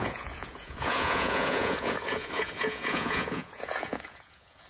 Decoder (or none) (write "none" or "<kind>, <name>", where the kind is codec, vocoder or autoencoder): vocoder, Vocos